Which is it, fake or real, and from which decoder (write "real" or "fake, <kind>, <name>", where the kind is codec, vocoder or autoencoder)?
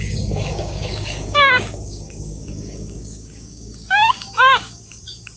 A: fake, codec, DAC